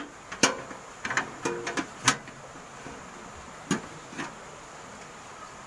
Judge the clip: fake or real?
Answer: real